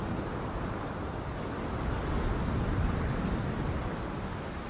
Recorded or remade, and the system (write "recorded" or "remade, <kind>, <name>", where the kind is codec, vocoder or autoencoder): recorded